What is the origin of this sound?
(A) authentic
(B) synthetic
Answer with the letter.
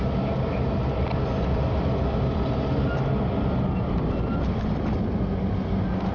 A